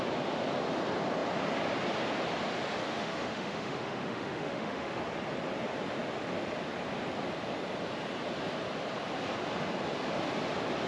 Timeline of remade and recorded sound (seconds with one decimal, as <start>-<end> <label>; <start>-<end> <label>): 0.0-2.8 recorded; 2.8-5.0 remade; 5.0-10.9 recorded